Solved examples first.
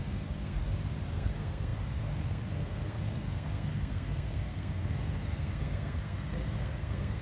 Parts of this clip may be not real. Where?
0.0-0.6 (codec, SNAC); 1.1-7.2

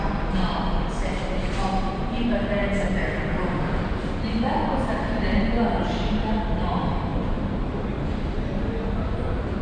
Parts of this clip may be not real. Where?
none

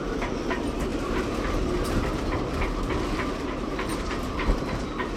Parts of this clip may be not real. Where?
0.9-1.5 (vocoder, BigVGAN v2); 3.9-4.8

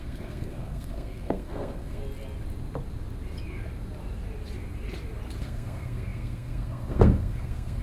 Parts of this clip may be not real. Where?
0.0-2.0 (codec, SNAC); 5.4-7.8

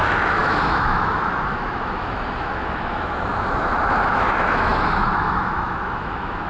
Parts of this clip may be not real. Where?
0.0-6.5 (autoencoder, DAC-VAE)

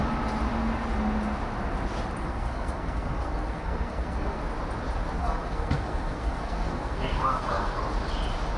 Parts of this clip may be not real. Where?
2.2-4.4 (codec, SNAC); 5.2-7.8

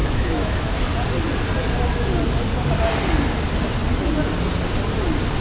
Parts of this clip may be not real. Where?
0.0-0.8 (autoencoder, DAC-VAE)